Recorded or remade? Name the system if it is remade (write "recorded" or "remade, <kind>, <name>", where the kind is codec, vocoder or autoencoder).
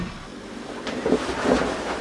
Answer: recorded